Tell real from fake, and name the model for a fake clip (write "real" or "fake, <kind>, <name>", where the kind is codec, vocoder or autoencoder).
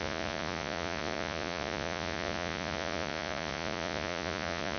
fake, vocoder, Vocos